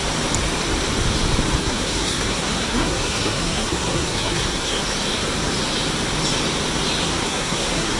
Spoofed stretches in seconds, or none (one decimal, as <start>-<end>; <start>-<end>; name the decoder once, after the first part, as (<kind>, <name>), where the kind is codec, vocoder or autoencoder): 1.6-4.8 (codec, SNAC); 7.0-8.0